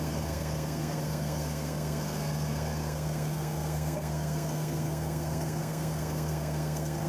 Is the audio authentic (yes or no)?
no